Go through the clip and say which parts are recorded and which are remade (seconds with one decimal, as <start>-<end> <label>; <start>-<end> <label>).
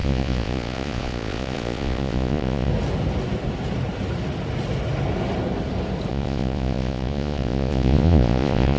0.0-2.7 remade; 2.7-6.1 recorded; 6.1-8.8 remade